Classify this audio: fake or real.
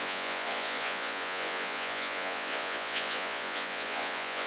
fake